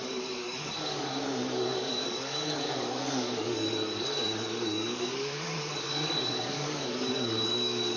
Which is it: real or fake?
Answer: fake